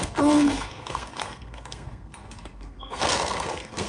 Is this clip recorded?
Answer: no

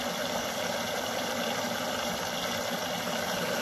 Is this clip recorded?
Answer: yes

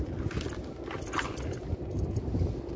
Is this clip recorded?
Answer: yes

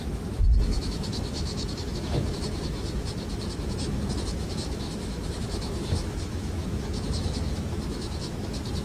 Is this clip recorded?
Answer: no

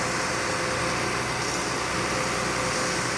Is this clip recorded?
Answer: yes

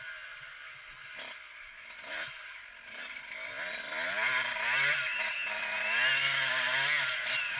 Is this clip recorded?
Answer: yes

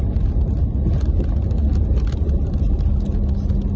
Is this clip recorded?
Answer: yes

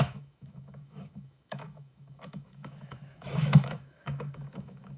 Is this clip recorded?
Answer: no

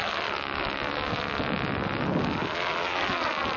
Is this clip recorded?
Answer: yes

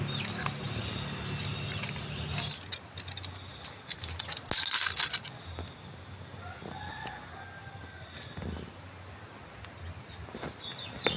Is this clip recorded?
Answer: yes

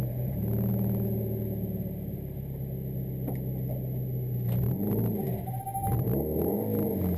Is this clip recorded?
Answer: yes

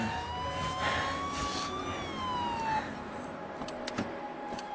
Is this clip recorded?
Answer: yes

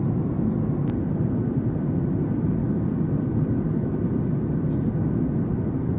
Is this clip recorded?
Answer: yes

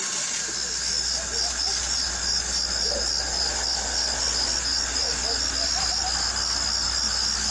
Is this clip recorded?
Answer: yes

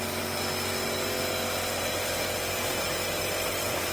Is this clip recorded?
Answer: yes